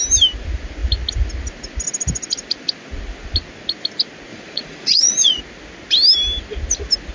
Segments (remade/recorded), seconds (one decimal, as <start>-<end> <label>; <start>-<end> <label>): 0.0-4.3 recorded; 4.3-5.4 remade; 5.4-7.1 recorded